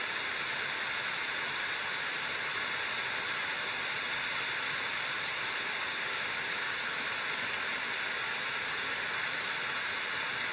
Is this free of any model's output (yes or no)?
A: yes